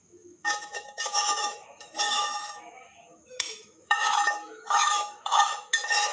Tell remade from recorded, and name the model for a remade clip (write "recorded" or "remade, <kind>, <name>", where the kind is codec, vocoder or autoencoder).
remade, autoencoder, DAC-VAE